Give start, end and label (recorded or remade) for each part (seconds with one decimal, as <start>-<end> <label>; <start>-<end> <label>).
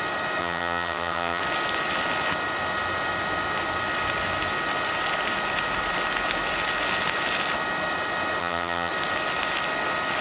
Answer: 0.0-0.4 recorded; 0.4-1.4 remade; 1.4-8.4 recorded; 8.4-8.9 remade; 8.9-10.2 recorded